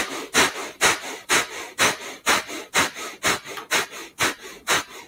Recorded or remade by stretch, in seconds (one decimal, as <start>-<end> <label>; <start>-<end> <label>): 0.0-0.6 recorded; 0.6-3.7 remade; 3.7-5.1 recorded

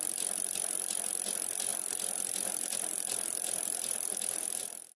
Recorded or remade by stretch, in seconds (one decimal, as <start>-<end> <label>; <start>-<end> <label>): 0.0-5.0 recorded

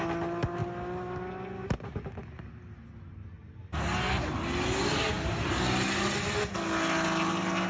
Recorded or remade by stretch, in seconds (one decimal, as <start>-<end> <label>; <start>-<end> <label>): 0.0-7.7 recorded

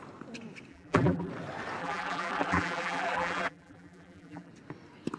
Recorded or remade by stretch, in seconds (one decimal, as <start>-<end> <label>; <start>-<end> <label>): 0.0-0.7 recorded; 0.7-1.3 remade; 1.3-1.8 recorded; 1.8-4.5 remade; 4.5-5.2 recorded

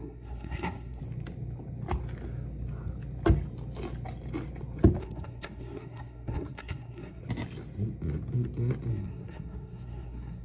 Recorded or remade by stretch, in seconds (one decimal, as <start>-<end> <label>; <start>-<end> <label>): 0.0-1.0 remade; 1.0-5.0 recorded; 5.0-7.2 remade; 7.2-8.9 recorded; 8.9-10.4 remade

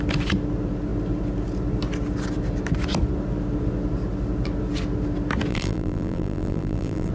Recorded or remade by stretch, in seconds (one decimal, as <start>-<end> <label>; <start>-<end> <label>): 0.0-5.5 recorded; 5.5-7.1 remade

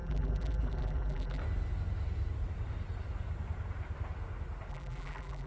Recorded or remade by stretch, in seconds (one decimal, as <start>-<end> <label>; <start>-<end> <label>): 0.0-1.4 remade; 1.4-4.7 recorded; 4.7-5.5 remade